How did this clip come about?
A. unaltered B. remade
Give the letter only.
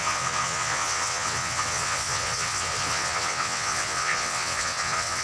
B